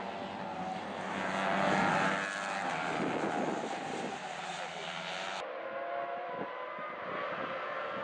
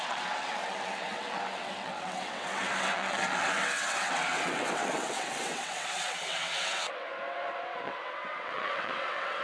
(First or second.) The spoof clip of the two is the second